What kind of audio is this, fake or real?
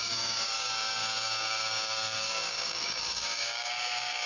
fake